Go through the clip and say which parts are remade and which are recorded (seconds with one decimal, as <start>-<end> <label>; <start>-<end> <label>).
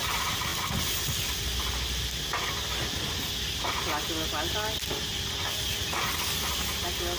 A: 0.0-7.2 recorded